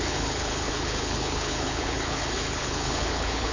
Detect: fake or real fake